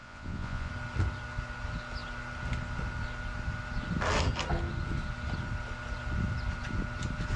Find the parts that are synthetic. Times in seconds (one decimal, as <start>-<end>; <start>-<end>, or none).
0.0-0.7